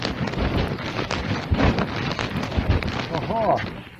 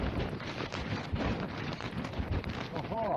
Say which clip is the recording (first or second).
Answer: first